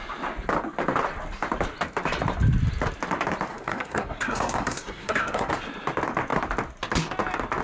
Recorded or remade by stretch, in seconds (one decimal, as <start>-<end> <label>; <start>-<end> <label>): 0.0-3.5 recorded; 3.5-5.5 remade; 5.5-7.6 recorded